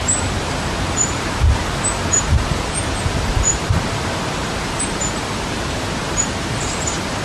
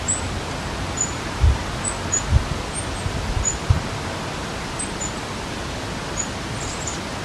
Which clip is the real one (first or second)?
second